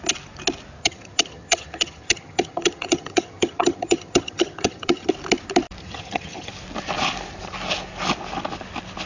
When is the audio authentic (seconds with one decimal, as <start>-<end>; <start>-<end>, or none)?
0.0-0.8; 5.1-5.8; 6.5-9.1